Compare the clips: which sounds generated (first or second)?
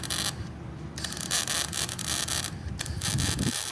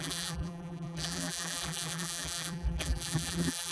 second